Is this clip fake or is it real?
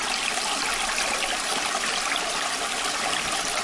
real